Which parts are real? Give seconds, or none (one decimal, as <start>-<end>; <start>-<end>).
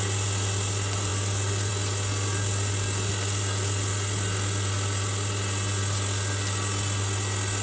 0.0-7.6